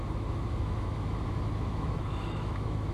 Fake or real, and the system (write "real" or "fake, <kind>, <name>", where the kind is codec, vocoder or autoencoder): fake, autoencoder, DAC-VAE